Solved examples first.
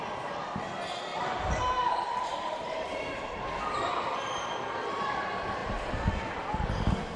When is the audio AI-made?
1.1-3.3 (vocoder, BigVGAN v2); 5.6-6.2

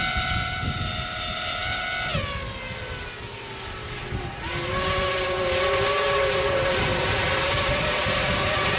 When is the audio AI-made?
none

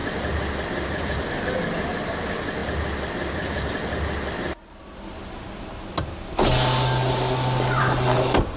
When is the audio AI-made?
none

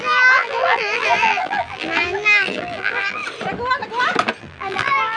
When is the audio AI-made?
0.0-3.2 (vocoder, BigVGAN v2); 4.4-5.2

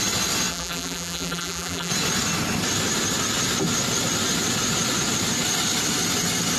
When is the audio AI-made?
0.5-1.9 (vocoder, BigVGAN v2)

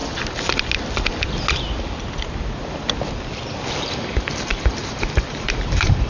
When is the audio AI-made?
3.7-6.1 (vocoder, BigVGAN v2)